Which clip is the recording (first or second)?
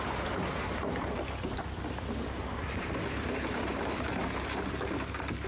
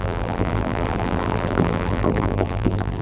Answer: first